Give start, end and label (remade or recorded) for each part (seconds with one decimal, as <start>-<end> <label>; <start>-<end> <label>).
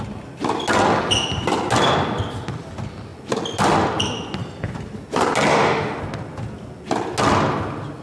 0.0-5.5 recorded; 5.5-6.0 remade; 6.0-8.0 recorded